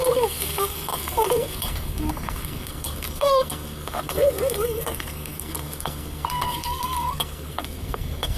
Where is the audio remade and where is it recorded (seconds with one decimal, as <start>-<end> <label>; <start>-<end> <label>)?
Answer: 0.0-8.4 remade

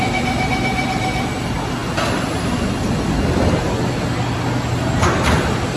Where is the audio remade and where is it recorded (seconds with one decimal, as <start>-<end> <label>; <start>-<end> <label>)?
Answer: 0.0-5.8 recorded

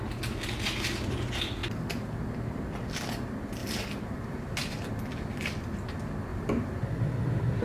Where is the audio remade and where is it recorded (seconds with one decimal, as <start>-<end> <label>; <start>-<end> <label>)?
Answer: 0.0-3.6 recorded; 3.6-4.9 remade; 4.9-6.3 recorded; 6.3-6.8 remade; 6.8-7.6 recorded

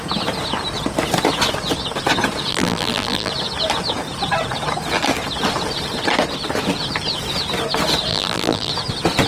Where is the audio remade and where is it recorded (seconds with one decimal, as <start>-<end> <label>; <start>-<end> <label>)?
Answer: 0.0-2.5 recorded; 2.5-3.3 remade; 3.3-8.1 recorded; 8.1-8.7 remade; 8.7-9.3 recorded

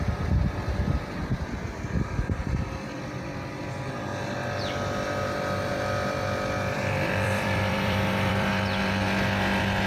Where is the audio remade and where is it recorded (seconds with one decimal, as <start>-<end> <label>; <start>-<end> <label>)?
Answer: 0.0-2.4 recorded; 2.4-3.5 remade; 3.5-5.7 recorded; 5.7-8.5 remade; 8.5-9.9 recorded

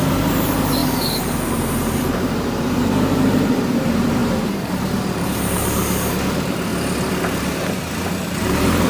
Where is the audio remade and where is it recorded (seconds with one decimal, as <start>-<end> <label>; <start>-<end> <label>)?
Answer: 0.0-6.7 remade; 6.7-8.4 recorded; 8.4-8.9 remade